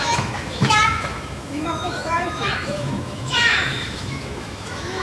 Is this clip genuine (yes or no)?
no